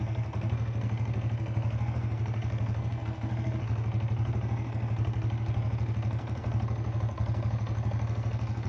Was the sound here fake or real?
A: fake